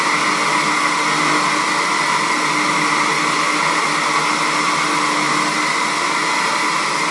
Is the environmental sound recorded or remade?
recorded